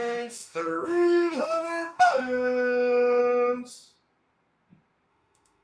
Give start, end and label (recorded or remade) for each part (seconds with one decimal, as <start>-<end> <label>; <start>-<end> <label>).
0.0-3.2 remade; 3.2-5.1 recorded; 5.1-5.6 remade